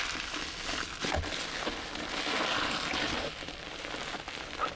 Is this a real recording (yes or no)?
yes